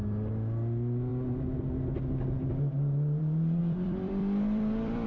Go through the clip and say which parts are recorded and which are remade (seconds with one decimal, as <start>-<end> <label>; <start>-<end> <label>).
0.0-3.6 recorded; 3.6-5.1 remade